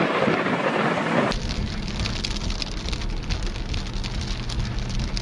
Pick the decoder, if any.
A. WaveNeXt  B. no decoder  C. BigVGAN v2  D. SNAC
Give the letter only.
B